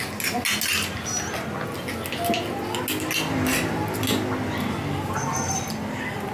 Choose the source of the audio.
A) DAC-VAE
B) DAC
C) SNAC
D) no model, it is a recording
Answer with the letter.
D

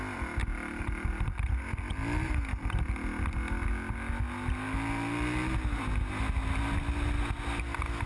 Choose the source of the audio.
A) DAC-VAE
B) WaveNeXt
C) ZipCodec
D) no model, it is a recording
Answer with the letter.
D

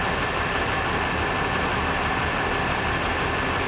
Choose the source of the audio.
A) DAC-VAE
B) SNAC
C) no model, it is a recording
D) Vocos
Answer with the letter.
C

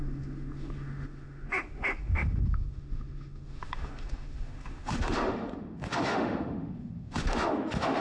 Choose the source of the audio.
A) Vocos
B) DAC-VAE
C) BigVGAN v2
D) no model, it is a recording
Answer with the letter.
B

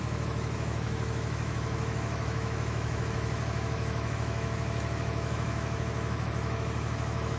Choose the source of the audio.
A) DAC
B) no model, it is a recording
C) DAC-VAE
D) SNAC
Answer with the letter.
C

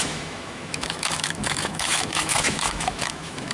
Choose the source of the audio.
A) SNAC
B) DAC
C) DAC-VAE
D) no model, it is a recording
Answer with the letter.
C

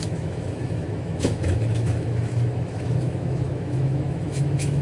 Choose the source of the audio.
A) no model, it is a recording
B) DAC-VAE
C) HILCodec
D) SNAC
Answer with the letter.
B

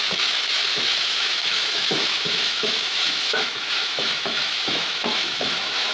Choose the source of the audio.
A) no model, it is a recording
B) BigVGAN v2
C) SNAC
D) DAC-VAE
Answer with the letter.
D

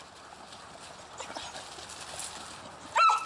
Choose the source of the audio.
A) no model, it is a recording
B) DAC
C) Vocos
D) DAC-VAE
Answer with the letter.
A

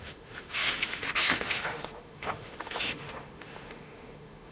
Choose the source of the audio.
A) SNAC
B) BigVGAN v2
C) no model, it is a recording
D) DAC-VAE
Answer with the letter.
D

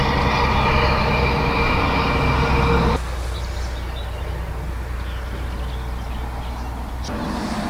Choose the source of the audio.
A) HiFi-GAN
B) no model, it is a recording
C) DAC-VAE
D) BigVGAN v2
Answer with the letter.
B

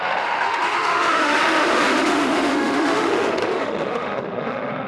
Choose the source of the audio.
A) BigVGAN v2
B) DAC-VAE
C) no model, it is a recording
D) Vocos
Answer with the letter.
B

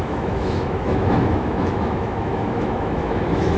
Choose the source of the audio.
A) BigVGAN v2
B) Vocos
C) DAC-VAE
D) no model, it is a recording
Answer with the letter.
C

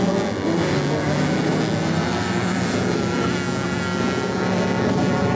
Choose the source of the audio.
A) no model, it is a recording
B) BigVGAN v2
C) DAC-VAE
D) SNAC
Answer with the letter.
A